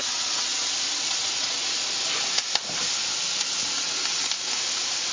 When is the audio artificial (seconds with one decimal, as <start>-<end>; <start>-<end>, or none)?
0.0-0.5; 1.0-1.7